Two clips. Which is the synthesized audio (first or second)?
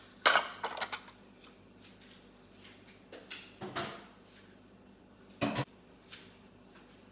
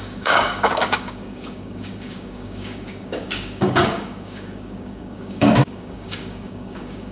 second